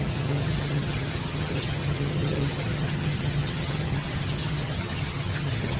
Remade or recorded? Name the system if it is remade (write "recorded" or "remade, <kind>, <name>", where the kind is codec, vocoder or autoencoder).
remade, vocoder, HiFi-GAN